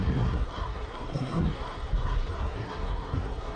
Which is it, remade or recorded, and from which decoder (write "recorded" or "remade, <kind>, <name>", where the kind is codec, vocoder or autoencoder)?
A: remade, codec, SNAC